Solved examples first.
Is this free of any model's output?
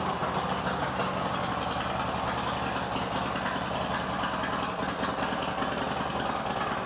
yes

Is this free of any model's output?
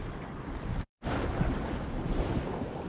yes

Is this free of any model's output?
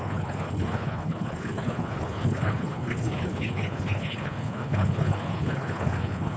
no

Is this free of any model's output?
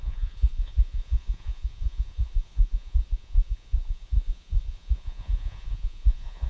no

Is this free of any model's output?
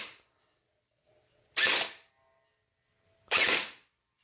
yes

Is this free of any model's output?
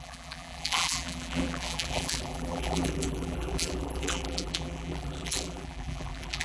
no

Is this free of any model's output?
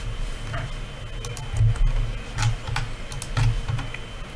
yes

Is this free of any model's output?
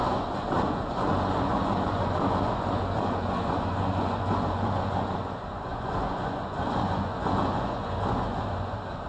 no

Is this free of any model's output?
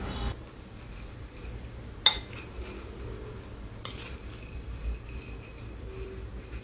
yes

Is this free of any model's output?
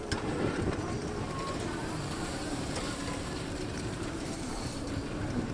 no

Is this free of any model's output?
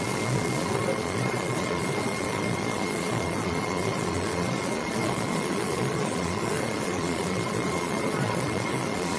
no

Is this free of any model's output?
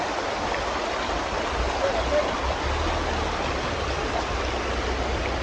yes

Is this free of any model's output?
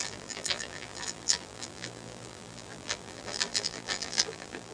no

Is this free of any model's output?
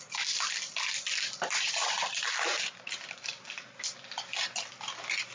yes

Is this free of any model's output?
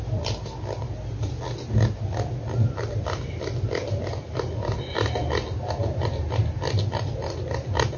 yes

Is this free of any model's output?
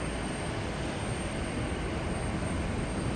yes